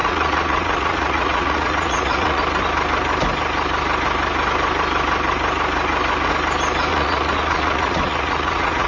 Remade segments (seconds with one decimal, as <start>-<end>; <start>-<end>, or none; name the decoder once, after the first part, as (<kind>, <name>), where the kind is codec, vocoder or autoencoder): 0.0-2.4 (vocoder, Vocos); 6.9-8.9